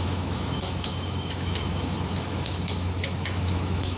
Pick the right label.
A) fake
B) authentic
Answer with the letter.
A